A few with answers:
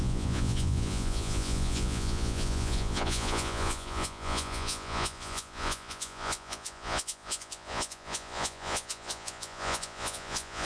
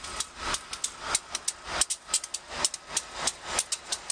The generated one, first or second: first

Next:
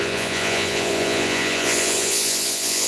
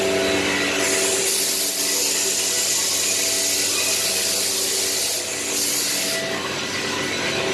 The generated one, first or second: first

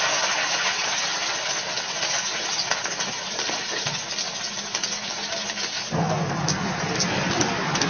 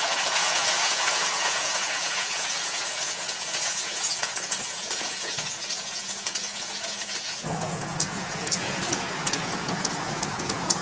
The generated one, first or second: second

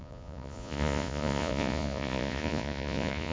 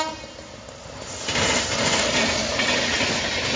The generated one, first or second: first